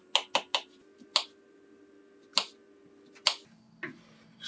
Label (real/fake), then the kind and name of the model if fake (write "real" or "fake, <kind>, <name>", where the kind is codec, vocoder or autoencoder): real